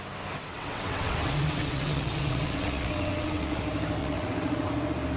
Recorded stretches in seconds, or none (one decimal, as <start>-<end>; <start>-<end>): 0.0-0.5; 3.6-4.0; 4.7-5.2